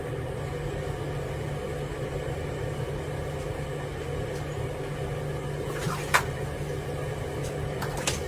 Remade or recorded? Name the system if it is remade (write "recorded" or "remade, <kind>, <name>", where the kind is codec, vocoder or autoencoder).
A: recorded